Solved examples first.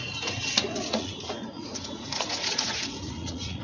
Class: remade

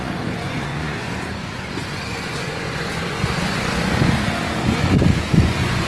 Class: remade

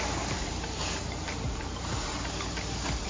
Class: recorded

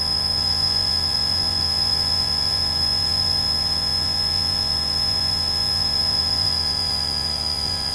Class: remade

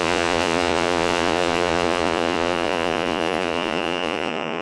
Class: remade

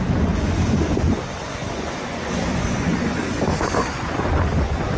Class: remade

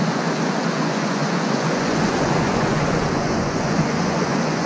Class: remade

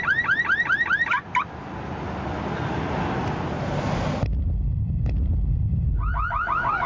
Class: recorded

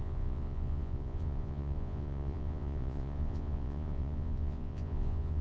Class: remade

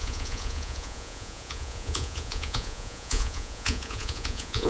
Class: remade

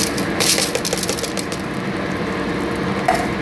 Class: recorded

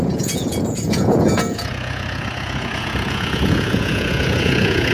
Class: remade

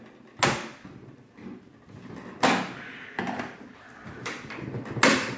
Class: recorded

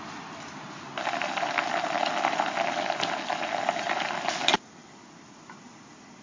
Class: recorded